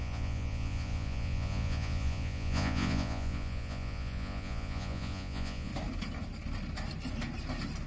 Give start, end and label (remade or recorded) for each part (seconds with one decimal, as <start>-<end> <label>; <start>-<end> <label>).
0.0-5.7 remade; 5.7-7.9 recorded